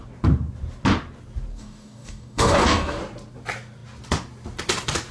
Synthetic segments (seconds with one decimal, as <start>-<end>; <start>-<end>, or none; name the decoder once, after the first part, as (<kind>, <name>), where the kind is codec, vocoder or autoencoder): 1.5-3.0 (codec, DAC)